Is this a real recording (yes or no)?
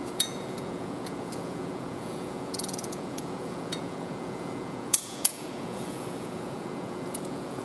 no